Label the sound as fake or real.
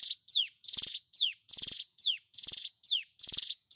fake